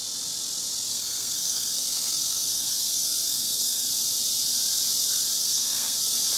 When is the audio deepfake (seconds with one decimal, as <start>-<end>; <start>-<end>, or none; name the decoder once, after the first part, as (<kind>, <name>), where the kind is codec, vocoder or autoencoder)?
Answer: 0.9-3.9 (codec, SNAC); 5.4-6.0

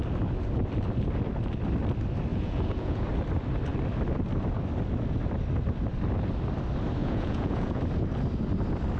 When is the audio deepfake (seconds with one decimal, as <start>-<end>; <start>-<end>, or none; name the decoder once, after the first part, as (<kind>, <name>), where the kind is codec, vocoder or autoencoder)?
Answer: 2.3-3.1 (vocoder, Vocos); 7.0-7.8